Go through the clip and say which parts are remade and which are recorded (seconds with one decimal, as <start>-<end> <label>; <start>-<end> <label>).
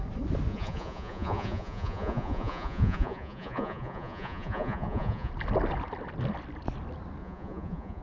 0.0-0.5 recorded; 0.5-5.3 remade; 5.3-7.2 recorded; 7.2-8.0 remade